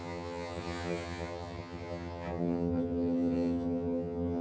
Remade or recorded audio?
remade